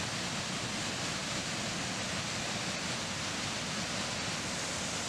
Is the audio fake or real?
real